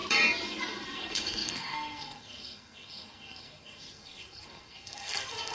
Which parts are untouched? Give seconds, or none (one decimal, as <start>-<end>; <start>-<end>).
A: 0.0-0.6